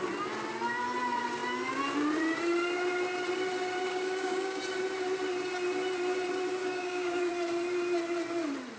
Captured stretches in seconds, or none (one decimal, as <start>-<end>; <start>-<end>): 0.0-3.9; 4.6-6.6; 7.3-8.8

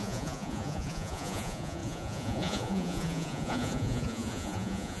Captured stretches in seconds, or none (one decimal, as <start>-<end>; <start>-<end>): none